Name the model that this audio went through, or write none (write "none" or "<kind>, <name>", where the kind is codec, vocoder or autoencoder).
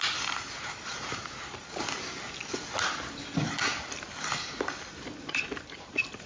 none